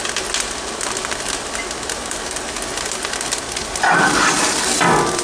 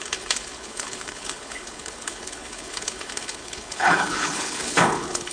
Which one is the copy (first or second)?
second